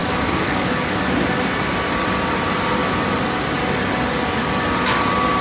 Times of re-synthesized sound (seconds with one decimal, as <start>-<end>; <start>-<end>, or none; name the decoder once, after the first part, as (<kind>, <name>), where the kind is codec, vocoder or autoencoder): 0.0-0.9 (codec, DAC)